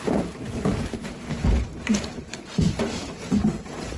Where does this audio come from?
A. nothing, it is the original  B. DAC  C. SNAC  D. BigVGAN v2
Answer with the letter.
D